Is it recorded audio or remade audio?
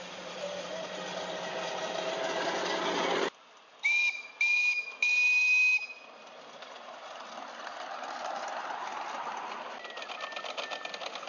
recorded